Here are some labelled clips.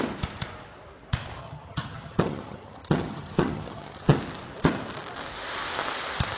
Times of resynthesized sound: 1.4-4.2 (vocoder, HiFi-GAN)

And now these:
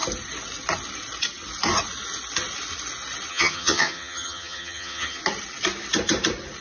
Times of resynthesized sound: 3.3-5.2 (vocoder, HiFi-GAN)

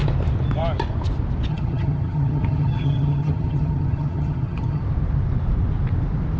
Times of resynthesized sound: 1.5-4.8 (vocoder, HiFi-GAN)

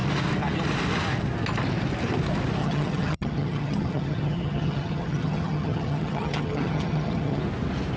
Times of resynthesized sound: 2.6-7.4 (vocoder, HiFi-GAN)